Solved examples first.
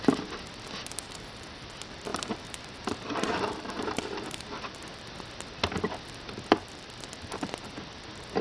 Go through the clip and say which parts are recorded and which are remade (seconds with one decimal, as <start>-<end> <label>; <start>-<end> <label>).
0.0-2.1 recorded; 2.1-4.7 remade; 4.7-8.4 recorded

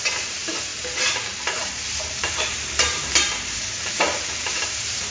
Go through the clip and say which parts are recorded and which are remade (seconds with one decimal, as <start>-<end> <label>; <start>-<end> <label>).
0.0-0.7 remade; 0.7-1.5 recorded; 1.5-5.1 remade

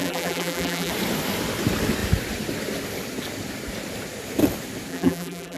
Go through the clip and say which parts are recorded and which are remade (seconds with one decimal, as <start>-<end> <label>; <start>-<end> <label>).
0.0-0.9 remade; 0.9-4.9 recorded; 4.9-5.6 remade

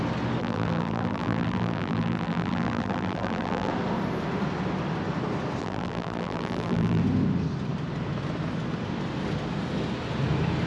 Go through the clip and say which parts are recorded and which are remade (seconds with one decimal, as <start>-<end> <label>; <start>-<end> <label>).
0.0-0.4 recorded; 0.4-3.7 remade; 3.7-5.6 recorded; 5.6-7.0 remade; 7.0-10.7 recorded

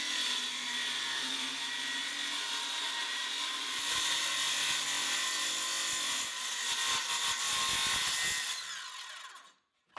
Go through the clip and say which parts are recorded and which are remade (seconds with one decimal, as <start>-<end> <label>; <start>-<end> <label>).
0.0-3.0 recorded; 3.0-4.3 remade; 4.3-10.0 recorded

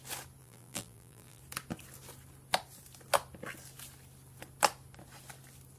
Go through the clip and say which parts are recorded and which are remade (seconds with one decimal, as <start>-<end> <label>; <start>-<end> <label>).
0.0-0.4 recorded; 0.4-1.4 remade; 1.4-5.8 recorded

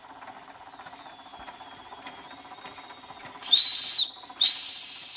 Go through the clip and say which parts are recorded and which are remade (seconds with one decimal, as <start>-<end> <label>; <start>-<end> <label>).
0.0-5.2 recorded